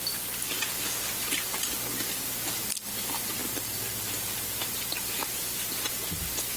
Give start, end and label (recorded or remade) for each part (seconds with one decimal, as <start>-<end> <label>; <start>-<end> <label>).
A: 0.0-3.4 recorded; 3.4-5.7 remade; 5.7-6.6 recorded